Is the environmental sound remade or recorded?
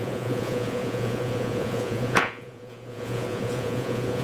remade